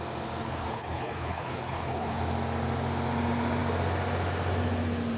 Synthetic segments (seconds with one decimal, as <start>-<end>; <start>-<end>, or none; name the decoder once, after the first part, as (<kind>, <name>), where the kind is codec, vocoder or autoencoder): 0.4-2.2 (codec, HILCodec)